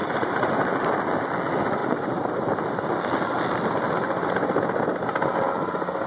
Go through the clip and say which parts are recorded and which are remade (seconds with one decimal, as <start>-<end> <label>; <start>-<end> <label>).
0.0-0.5 remade; 0.5-1.8 recorded; 1.8-2.6 remade; 2.6-6.1 recorded

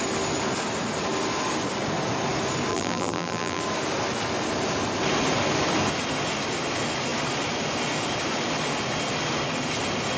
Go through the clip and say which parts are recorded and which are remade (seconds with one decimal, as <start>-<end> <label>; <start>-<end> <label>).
0.0-2.7 recorded; 2.7-3.6 remade; 3.6-10.2 recorded

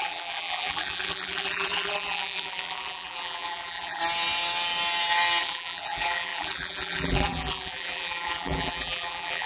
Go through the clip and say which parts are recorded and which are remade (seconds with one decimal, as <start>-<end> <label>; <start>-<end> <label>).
0.0-4.0 remade; 4.0-5.4 recorded; 5.4-9.5 remade

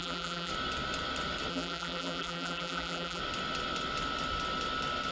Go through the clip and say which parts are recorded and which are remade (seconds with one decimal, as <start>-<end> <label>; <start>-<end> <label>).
0.0-0.5 remade; 0.5-1.5 recorded; 1.5-3.2 remade; 3.2-5.1 recorded